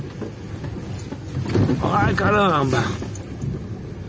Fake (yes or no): no